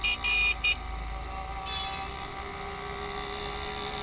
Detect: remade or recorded recorded